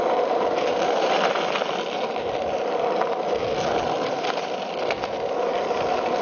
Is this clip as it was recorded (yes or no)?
yes